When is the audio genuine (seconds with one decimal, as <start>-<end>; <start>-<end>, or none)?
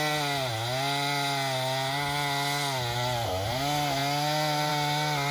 0.0-5.3